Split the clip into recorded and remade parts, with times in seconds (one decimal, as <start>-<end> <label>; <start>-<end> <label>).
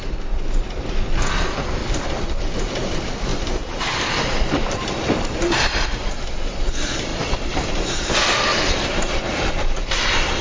0.0-1.8 recorded; 1.8-2.5 remade; 2.5-3.3 recorded; 3.3-5.6 remade; 5.6-8.5 recorded; 8.5-10.4 remade